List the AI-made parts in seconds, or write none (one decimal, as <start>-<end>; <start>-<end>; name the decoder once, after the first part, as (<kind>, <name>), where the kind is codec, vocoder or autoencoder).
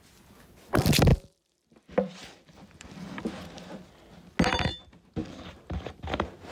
1.1-2.9 (vocoder, BigVGAN v2)